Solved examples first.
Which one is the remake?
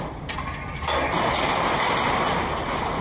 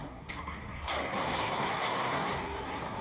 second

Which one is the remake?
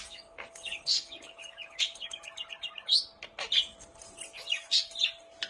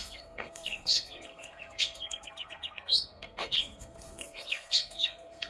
second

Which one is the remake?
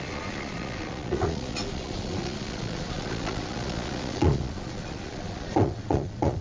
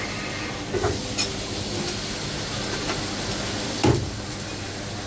first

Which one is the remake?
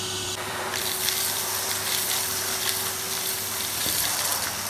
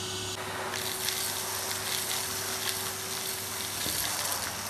first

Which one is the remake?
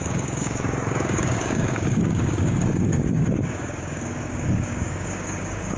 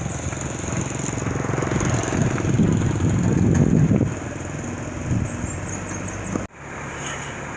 first